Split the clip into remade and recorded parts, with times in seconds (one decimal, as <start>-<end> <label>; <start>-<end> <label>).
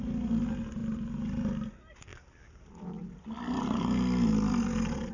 0.0-0.8 recorded; 0.8-1.5 remade; 1.5-5.1 recorded